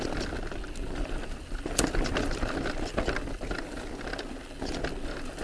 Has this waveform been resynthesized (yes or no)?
no